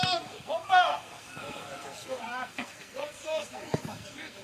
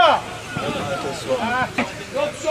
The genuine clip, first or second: second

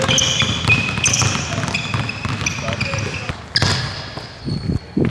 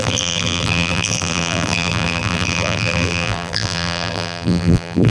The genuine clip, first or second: first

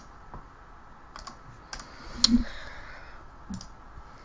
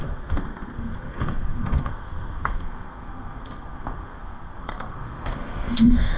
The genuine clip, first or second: first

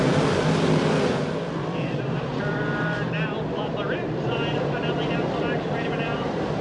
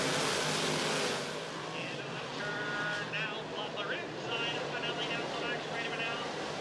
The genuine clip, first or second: second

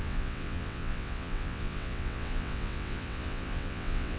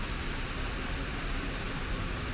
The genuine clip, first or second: second